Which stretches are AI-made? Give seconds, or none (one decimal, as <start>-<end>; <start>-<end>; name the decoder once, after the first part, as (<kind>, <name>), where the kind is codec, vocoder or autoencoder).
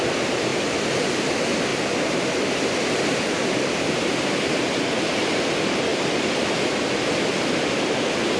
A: 0.0-0.5 (vocoder, BigVGAN v2); 1.2-1.7; 3.3-8.4